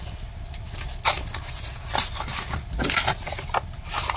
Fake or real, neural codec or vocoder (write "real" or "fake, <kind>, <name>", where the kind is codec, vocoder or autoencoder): real